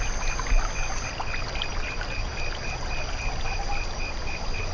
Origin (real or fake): real